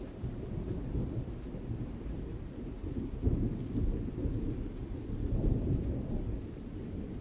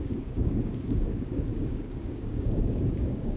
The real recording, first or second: first